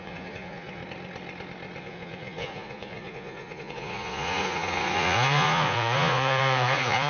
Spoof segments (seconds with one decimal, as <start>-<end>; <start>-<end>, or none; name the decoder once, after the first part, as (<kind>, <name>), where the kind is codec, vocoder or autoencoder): 0.0-0.8 (vocoder, Vocos); 1.8-7.1